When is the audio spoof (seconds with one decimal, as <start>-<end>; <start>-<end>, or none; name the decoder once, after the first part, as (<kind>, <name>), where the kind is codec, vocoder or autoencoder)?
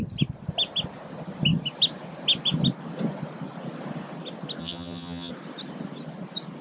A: 4.6-5.3 (vocoder, HiFi-GAN)